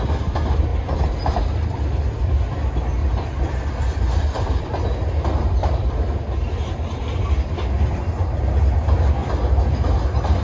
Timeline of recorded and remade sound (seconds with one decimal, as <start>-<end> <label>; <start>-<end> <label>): 0.0-3.0 recorded; 3.0-6.6 remade; 6.6-10.4 recorded